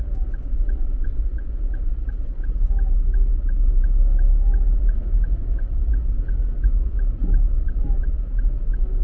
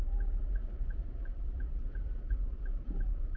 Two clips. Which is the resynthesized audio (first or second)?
second